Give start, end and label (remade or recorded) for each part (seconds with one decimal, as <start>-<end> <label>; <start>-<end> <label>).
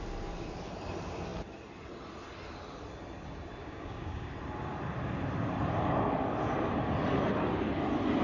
0.0-3.6 recorded; 3.6-4.3 remade; 4.3-8.2 recorded